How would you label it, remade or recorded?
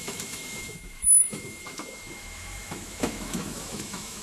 remade